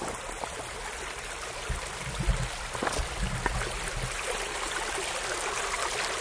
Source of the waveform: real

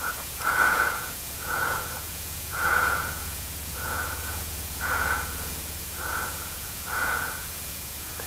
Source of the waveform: fake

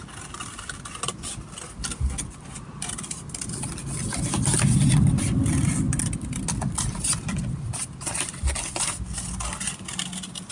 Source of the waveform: real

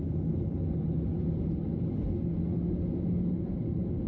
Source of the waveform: real